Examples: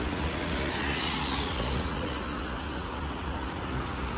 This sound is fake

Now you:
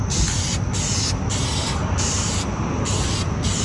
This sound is real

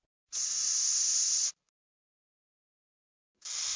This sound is real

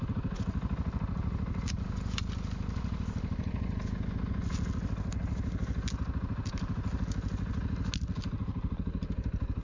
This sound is real